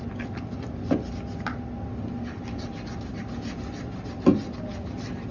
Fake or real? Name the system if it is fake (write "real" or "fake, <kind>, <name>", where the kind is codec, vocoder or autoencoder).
real